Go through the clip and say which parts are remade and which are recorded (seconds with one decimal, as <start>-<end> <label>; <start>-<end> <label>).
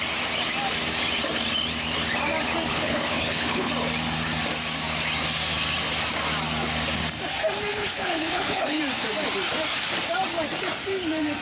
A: 0.0-2.7 recorded; 2.7-3.7 remade; 3.7-7.7 recorded; 7.7-8.8 remade; 8.8-11.4 recorded